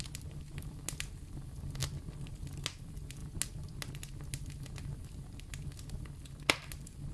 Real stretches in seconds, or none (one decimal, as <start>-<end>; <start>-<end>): 0.0-7.1